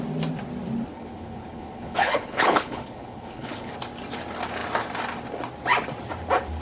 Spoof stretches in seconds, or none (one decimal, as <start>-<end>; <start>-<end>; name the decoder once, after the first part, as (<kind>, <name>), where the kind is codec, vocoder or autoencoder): 0.9-3.7 (codec, HILCodec)